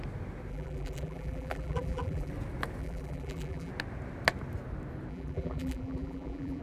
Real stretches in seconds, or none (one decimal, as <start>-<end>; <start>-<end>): 0.0-0.5; 2.3-2.8; 3.7-5.1